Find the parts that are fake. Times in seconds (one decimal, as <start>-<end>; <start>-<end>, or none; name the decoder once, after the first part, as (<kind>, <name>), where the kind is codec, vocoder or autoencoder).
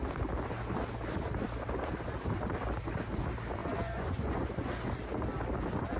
3.6-4.7 (vocoder, Vocos)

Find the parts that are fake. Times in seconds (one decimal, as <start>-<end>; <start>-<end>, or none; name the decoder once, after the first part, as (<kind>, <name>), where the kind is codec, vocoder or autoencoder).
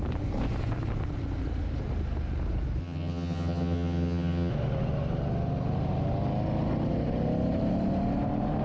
2.8-4.5 (vocoder, HiFi-GAN)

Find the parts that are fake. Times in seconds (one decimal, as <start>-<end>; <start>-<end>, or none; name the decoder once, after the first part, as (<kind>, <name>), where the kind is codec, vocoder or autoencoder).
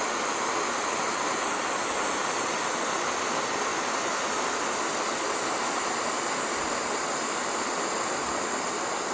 none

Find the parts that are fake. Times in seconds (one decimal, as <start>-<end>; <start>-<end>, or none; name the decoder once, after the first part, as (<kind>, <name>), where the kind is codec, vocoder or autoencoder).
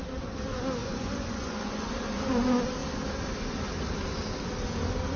0.8-1.9 (vocoder, Vocos)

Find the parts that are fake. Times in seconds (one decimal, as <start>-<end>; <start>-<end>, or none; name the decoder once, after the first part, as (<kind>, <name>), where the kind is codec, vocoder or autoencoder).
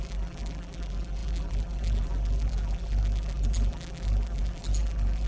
0.0-5.3 (vocoder, BigVGAN v2)